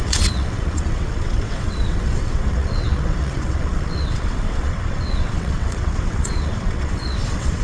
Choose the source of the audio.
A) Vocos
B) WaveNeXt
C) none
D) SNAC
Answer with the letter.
B